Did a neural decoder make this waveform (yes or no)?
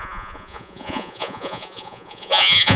yes